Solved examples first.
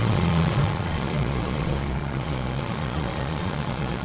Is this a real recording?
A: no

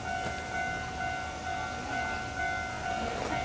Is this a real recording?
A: yes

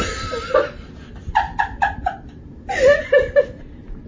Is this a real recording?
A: yes